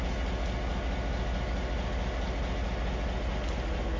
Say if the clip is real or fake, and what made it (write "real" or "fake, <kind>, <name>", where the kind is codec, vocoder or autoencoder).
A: real